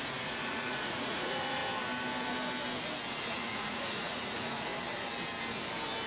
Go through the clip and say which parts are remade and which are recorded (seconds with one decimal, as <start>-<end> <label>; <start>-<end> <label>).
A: 0.0-1.6 remade; 1.6-3.2 recorded; 3.2-4.7 remade; 4.7-6.1 recorded